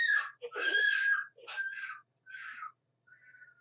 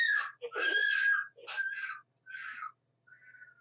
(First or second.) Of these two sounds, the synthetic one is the first